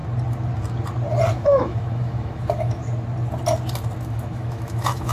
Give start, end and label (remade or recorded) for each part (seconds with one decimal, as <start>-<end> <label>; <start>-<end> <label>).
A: 0.0-1.3 recorded; 1.3-2.8 remade; 2.8-4.1 recorded; 4.1-5.1 remade